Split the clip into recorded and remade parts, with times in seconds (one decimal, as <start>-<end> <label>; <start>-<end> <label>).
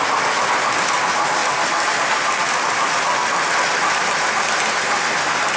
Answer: 0.0-5.6 recorded